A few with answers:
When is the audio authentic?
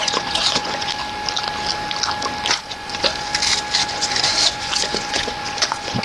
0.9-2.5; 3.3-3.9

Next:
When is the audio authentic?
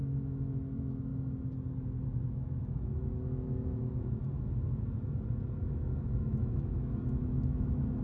1.1-2.3; 4.2-5.6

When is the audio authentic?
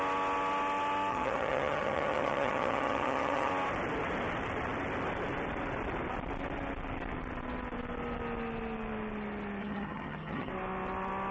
0.0-1.1; 3.5-9.6; 10.5-11.3